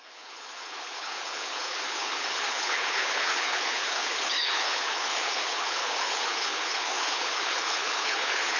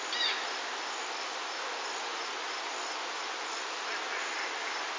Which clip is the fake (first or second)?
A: first